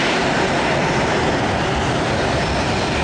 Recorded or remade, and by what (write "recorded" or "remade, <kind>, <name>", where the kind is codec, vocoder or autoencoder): recorded